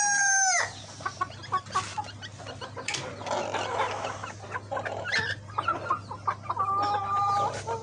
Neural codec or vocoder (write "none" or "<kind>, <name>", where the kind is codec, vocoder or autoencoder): none